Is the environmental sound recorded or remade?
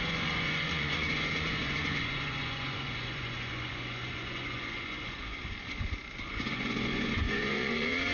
remade